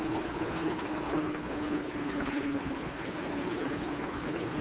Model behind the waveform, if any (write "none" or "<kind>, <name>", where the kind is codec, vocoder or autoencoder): codec, HILCodec